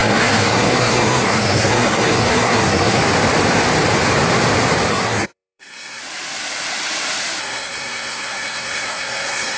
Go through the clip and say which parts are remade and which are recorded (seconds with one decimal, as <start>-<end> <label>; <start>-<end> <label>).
0.0-3.0 remade; 3.0-4.9 recorded; 4.9-6.0 remade; 6.0-7.4 recorded; 7.4-9.6 remade